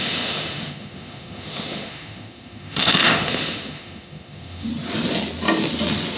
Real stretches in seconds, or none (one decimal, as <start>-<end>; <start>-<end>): 4.7-6.2